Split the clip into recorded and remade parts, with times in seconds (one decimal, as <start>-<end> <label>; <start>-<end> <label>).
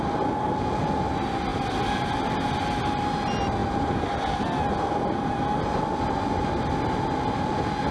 0.0-7.9 recorded